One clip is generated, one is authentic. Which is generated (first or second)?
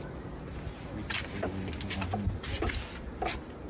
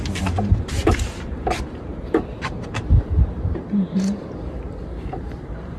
second